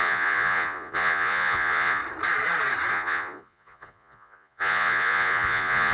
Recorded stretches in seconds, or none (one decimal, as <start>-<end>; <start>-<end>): 2.0-2.9